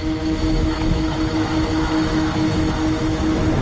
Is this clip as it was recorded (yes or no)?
no